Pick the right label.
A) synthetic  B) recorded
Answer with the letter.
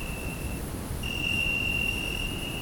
A